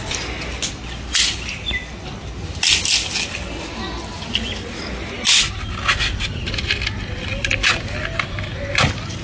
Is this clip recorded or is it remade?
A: recorded